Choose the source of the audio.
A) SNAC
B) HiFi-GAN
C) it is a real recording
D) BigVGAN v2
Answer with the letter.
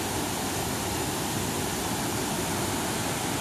C